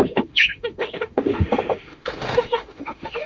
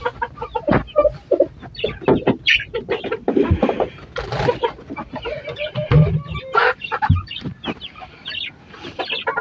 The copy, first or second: first